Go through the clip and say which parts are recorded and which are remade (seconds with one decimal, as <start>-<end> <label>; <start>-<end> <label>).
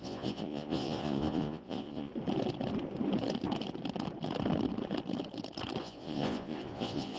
0.0-2.1 remade; 2.1-5.8 recorded; 5.8-7.2 remade